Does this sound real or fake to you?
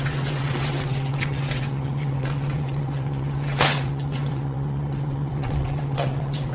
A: fake